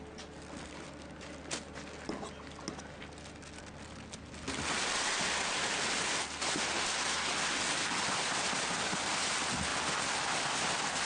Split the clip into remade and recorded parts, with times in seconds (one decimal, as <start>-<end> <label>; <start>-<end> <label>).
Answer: 0.0-11.1 recorded